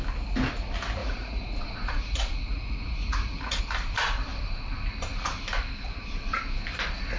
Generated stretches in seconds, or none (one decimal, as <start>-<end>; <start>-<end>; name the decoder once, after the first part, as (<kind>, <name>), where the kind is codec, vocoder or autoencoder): 1.0-3.6 (vocoder, Vocos)